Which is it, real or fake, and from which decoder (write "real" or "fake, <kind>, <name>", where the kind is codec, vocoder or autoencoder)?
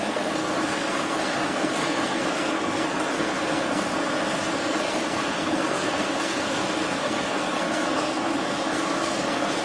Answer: fake, codec, SNAC